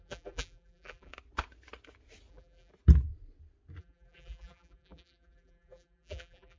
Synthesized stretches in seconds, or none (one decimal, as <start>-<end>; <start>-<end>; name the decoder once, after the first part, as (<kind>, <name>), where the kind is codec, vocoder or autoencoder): 0.0-1.1 (vocoder, BigVGAN v2); 2.3-2.7; 3.8-6.6